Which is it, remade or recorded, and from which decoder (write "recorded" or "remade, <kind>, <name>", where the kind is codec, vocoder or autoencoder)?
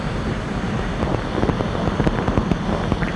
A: recorded